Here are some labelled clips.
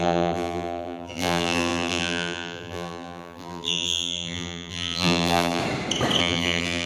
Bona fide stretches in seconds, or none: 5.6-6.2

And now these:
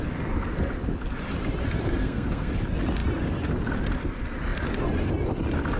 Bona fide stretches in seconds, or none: 0.0-2.0; 2.5-5.8

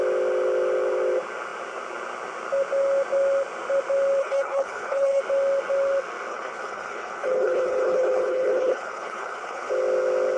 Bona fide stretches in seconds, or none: 0.0-4.2; 5.2-6.3; 9.7-10.4

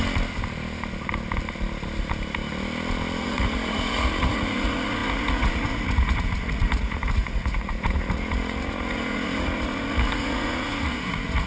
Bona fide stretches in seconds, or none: 0.0-3.2